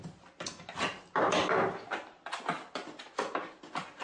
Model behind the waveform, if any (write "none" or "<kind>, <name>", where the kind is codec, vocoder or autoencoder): none